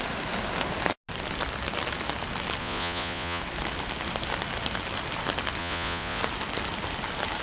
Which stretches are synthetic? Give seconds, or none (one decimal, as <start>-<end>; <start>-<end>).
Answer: 2.6-3.4; 5.6-6.2